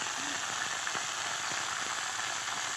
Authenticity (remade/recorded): recorded